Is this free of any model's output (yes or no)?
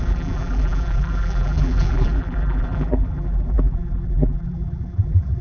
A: no